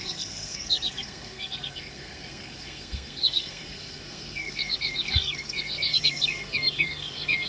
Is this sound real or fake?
fake